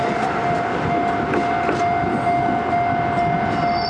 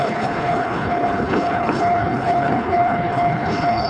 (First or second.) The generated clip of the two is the second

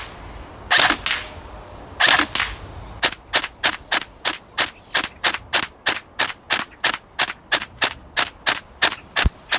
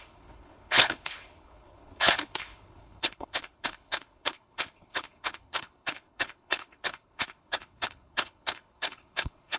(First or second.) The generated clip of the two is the second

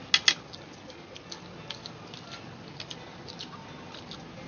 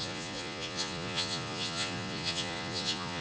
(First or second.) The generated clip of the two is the second